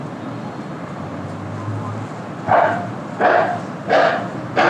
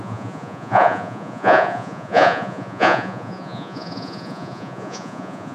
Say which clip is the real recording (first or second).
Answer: first